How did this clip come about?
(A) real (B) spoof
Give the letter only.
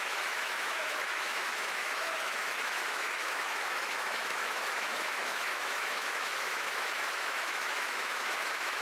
B